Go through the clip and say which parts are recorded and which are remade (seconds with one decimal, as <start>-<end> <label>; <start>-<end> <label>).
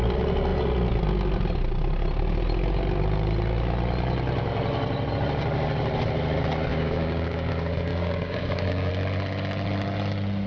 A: 0.0-6.7 recorded; 6.7-7.5 remade; 7.5-7.9 recorded; 7.9-8.9 remade; 8.9-10.5 recorded